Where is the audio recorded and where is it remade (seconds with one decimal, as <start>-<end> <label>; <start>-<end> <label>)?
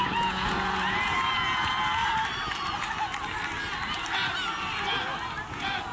0.0-2.0 remade; 2.0-5.5 recorded; 5.5-5.9 remade